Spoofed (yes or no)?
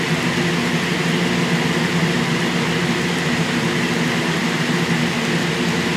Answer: no